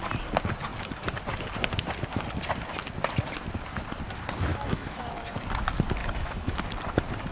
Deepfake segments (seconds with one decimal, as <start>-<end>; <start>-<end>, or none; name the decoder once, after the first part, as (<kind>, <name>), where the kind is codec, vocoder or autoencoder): 4.5-5.0 (autoencoder, DAC-VAE); 6.0-6.5